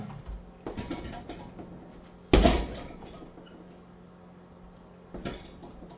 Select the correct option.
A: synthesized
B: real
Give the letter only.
B